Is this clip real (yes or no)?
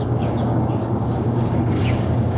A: no